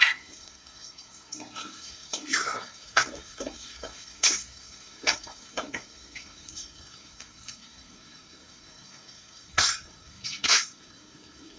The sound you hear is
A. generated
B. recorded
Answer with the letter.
A